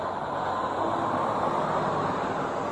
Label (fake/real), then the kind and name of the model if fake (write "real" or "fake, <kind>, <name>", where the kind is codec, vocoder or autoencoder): real